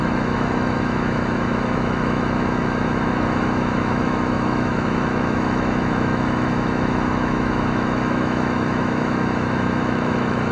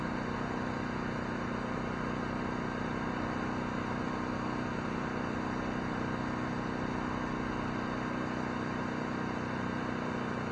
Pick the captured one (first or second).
second